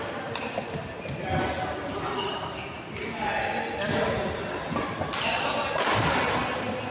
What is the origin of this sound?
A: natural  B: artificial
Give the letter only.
A